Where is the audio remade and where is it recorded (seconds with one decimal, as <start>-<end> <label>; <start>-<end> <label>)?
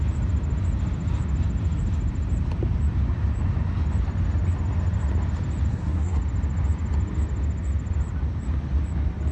0.0-5.7 recorded; 5.7-6.2 remade; 6.2-9.3 recorded